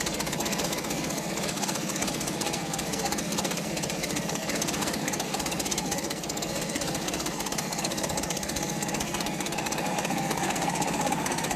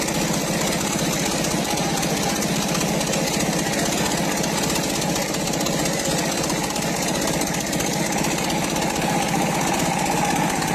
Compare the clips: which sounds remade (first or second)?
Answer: first